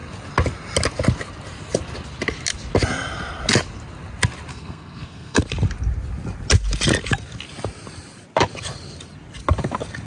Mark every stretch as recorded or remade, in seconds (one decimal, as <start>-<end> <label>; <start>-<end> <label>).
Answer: 0.0-4.5 recorded; 4.5-5.4 remade; 5.4-10.1 recorded